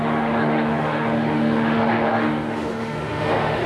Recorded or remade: remade